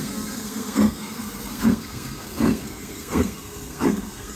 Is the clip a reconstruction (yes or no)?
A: yes